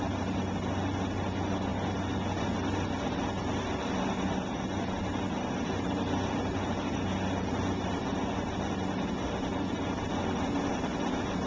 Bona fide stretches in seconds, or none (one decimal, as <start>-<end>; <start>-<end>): 0.0-11.5